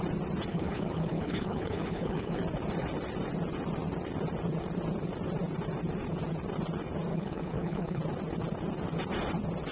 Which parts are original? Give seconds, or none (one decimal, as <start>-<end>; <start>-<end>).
0.0-0.5; 2.4-7.1; 8.0-9.7